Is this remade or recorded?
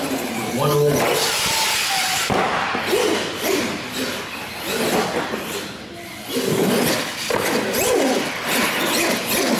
recorded